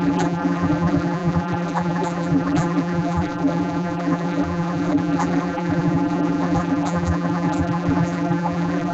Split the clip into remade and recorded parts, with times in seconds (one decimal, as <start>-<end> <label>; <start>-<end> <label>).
0.0-8.9 remade